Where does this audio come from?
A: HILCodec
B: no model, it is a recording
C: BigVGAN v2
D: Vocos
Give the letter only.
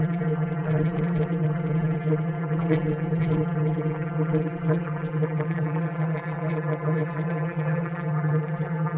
C